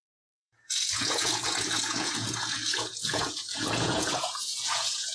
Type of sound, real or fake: fake